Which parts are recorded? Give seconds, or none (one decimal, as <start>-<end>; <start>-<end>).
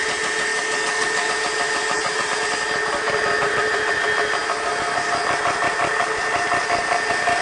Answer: 0.0-0.5; 1.3-7.4